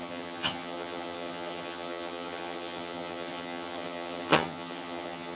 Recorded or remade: remade